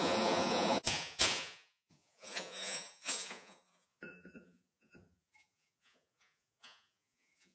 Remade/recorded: remade